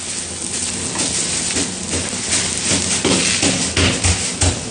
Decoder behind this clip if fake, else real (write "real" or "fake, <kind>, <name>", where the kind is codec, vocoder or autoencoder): real